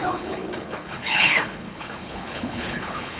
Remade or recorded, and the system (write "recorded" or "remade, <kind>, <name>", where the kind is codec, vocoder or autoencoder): remade, codec, HILCodec